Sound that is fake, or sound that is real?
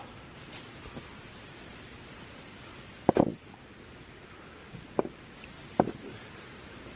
real